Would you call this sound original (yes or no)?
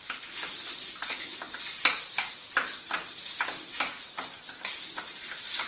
yes